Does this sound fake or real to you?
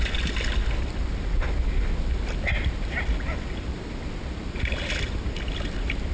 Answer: real